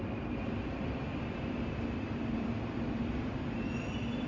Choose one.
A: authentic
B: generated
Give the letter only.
B